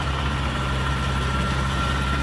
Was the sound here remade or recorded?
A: remade